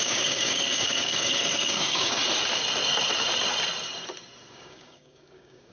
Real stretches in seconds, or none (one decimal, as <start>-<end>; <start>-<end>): 2.2-4.5